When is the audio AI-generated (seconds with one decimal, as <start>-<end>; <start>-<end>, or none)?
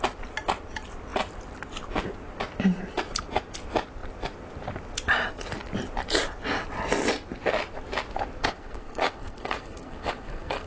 8.4-10.7